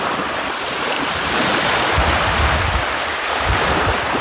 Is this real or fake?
fake